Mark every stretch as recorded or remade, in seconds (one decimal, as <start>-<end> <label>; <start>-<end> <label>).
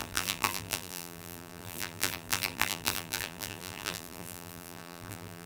0.0-5.5 remade